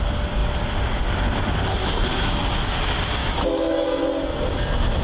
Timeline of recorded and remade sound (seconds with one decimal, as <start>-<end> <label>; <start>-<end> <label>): 0.0-1.8 recorded; 1.8-2.4 remade; 2.4-3.2 recorded; 3.2-4.0 remade; 4.0-5.0 recorded